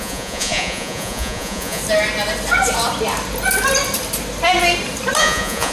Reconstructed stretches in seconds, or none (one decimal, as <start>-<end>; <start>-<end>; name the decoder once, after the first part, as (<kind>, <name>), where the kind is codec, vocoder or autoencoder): 0.0-1.8 (vocoder, Vocos); 5.2-5.7